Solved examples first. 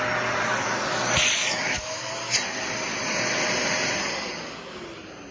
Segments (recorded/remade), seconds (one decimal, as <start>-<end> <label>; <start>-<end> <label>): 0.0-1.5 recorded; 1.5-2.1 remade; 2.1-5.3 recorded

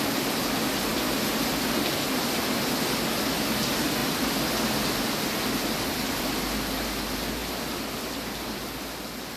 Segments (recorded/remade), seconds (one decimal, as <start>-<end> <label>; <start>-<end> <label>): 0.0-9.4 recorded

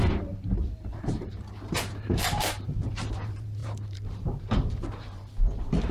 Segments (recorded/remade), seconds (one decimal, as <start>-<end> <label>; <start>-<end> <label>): 0.0-5.9 remade